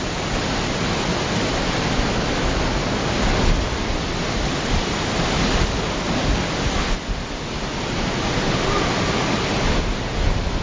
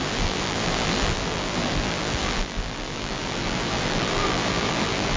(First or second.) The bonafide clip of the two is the first